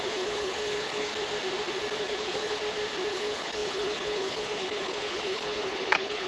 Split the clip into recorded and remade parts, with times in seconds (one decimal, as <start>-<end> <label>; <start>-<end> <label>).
0.0-1.1 remade; 1.1-2.0 recorded; 2.0-2.6 remade; 2.6-3.1 recorded; 3.1-6.3 remade